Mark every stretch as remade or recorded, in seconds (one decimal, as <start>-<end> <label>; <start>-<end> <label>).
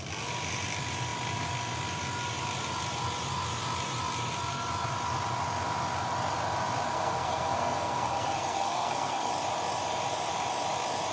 0.0-6.9 recorded; 6.9-9.3 remade; 9.3-11.1 recorded